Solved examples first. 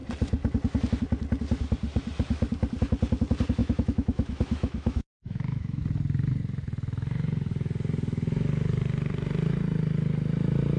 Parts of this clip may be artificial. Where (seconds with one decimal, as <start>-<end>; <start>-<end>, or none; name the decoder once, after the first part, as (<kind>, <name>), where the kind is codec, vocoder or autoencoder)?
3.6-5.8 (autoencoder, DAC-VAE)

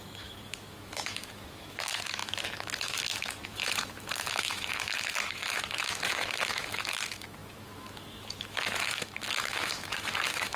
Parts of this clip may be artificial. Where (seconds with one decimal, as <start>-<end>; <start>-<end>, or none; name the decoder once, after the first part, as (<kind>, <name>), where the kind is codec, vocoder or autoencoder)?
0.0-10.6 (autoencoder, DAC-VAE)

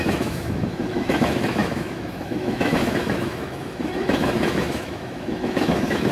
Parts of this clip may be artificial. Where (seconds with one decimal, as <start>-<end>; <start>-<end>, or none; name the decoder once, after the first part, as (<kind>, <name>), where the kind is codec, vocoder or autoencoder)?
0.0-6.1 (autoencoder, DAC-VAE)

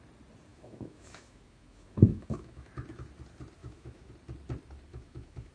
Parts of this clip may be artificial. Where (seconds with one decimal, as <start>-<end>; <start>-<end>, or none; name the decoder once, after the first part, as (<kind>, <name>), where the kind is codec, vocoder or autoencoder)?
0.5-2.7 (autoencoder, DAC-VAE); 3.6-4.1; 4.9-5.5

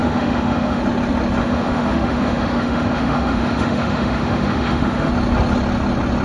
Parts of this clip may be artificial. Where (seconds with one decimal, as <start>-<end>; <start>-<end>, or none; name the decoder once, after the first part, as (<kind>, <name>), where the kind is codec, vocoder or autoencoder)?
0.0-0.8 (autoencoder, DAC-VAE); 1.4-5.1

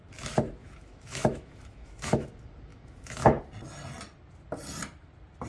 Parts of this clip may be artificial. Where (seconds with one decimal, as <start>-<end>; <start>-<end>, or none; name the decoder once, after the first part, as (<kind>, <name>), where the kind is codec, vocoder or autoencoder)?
0.6-2.3 (autoencoder, DAC-VAE); 2.7-3.4

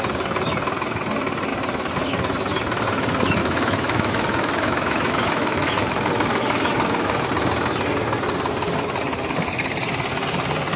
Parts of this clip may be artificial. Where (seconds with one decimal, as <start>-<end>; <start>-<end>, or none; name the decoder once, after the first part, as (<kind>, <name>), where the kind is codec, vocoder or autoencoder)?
3.4-7.3 (autoencoder, DAC-VAE)